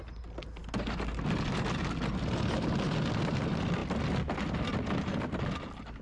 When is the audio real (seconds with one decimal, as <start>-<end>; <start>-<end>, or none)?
0.0-6.0